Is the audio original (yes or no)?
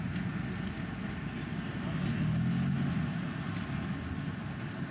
yes